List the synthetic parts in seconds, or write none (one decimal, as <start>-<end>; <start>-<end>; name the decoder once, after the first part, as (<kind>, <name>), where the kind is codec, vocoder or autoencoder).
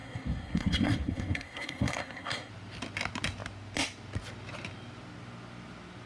0.0-2.5 (codec, SNAC)